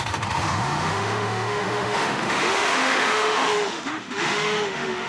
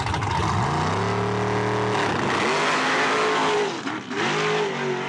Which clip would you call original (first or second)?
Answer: second